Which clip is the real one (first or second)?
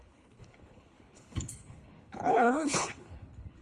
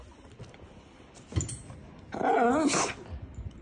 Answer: second